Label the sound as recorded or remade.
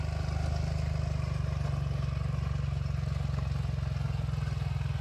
recorded